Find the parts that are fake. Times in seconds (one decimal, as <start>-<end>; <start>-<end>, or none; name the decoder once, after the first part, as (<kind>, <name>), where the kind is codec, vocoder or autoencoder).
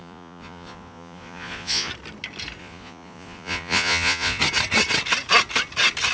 0.0-1.9 (vocoder, Vocos); 2.6-4.4